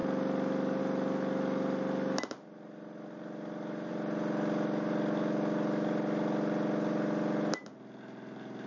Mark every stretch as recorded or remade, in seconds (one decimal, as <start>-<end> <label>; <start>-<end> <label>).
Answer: 0.0-8.7 recorded